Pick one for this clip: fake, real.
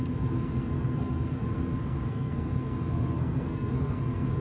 fake